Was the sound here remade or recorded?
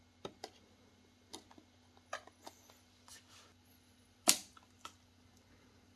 recorded